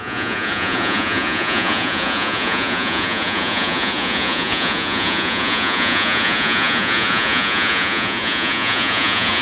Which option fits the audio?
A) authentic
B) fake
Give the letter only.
B